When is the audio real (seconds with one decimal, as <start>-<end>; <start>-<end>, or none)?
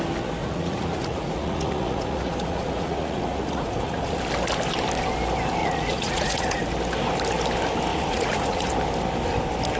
0.0-0.4; 4.2-5.6; 6.6-7.9; 8.7-9.8